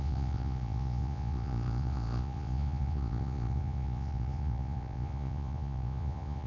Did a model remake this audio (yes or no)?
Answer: yes